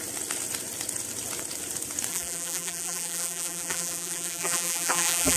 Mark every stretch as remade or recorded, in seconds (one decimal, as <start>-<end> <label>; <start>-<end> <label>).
0.0-2.1 recorded; 2.1-5.4 remade